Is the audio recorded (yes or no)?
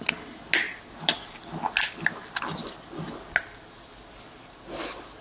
yes